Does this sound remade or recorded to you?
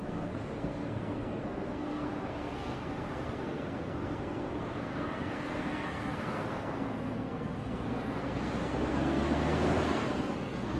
remade